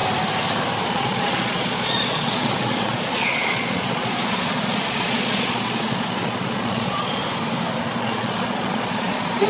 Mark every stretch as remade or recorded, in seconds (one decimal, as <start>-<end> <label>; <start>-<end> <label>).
0.0-0.8 recorded; 0.8-7.2 remade; 7.2-8.0 recorded; 8.0-9.5 remade